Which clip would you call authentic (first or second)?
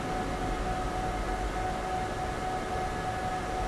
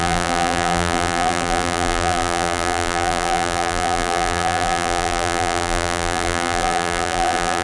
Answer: first